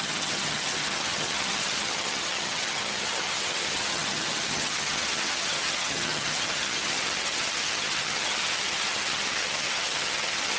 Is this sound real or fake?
fake